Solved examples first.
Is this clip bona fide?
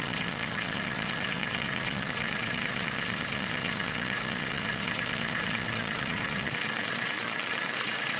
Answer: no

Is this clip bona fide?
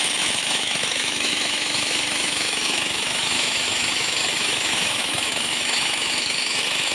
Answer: no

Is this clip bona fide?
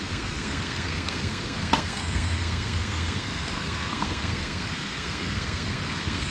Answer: no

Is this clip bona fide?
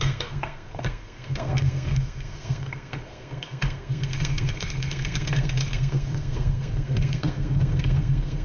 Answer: no